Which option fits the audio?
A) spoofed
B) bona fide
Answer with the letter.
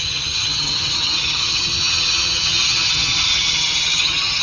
A